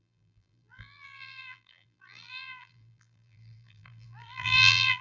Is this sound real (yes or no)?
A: no